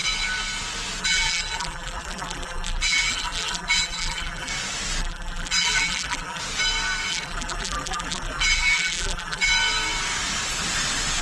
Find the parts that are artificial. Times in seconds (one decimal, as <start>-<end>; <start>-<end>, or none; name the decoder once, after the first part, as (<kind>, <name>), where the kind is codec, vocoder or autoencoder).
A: 1.0-4.5 (vocoder, BigVGAN v2); 5.0-6.4; 7.1-9.5